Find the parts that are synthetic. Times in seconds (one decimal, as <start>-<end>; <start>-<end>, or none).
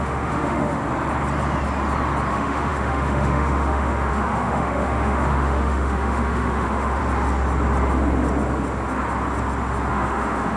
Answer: 0.0-0.8; 2.3-7.0; 9.9-10.6